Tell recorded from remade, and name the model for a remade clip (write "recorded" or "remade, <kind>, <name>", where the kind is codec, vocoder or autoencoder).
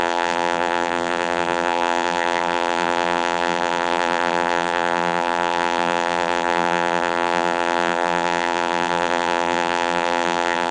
remade, vocoder, BigVGAN v2